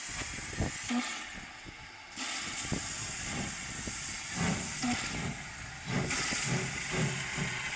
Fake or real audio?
real